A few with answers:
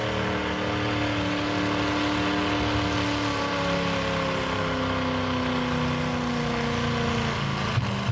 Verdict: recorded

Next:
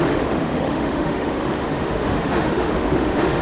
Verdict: remade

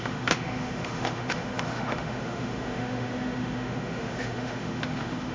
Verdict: remade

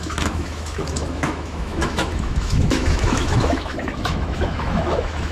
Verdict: remade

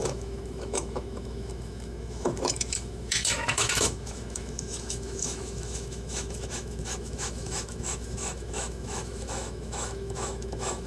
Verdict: remade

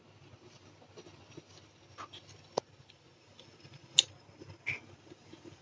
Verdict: recorded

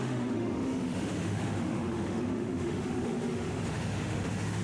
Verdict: remade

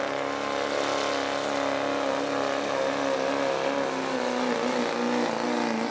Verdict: recorded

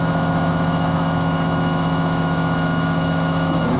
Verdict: remade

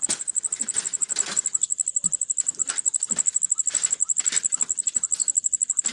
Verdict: recorded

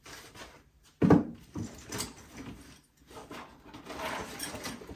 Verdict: recorded